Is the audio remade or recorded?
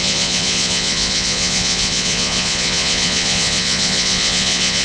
remade